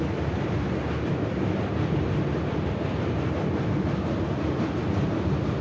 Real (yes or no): yes